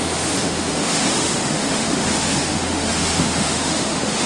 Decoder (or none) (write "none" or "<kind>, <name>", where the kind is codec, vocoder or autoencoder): autoencoder, DAC-VAE